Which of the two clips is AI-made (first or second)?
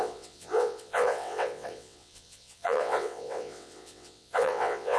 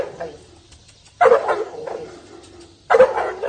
first